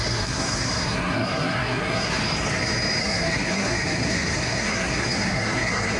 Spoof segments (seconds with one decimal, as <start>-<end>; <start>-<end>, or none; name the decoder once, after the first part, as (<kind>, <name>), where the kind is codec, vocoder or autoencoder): 0.0-2.2 (codec, SNAC); 3.0-6.0